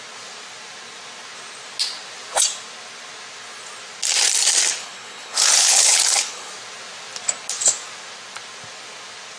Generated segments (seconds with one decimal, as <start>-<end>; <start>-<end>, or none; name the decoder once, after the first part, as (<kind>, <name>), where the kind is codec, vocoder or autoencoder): 4.8-6.5 (codec, HILCodec)